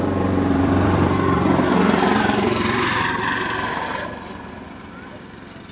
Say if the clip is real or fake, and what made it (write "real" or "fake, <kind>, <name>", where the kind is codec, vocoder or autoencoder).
fake, vocoder, BigVGAN v2